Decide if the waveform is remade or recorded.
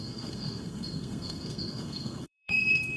remade